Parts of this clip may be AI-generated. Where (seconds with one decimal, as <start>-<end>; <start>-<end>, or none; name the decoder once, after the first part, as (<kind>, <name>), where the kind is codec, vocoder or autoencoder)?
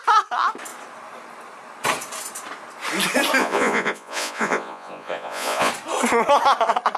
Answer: 3.4-5.7 (vocoder, Vocos)